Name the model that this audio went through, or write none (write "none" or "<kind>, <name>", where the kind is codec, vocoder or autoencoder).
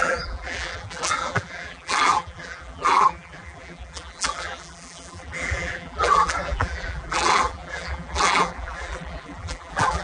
vocoder, BigVGAN v2